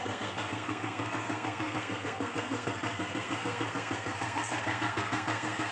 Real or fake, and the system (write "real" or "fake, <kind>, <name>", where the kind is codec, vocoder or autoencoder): fake, codec, SNAC